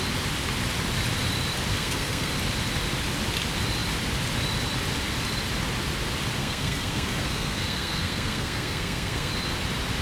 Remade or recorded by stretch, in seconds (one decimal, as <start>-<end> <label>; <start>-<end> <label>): 0.0-1.7 recorded; 1.7-2.3 remade; 2.3-6.4 recorded; 6.4-9.3 remade; 9.3-10.0 recorded